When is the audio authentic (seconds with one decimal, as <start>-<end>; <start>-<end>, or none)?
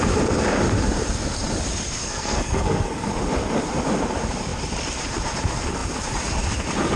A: 0.0-2.0; 3.1-7.0